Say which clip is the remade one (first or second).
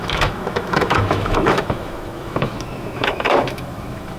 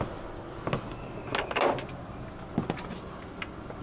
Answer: first